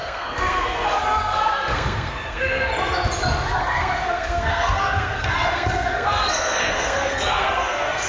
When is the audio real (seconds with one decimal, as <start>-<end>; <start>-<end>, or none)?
2.7-3.6